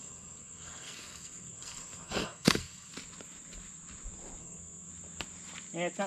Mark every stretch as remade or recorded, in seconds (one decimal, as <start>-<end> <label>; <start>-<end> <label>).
0.0-2.9 remade; 2.9-4.4 recorded; 4.4-4.9 remade; 4.9-6.1 recorded